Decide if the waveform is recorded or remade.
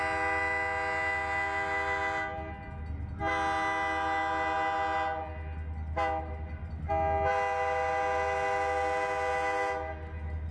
recorded